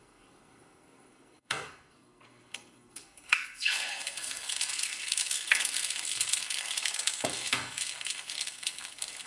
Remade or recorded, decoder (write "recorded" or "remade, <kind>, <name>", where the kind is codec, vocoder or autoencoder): remade, codec, SNAC